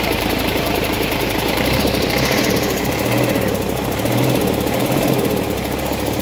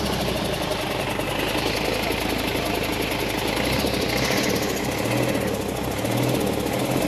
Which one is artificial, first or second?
first